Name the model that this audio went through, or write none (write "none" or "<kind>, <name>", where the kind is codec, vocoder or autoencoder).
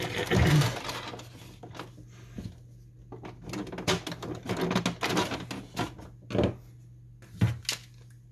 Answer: none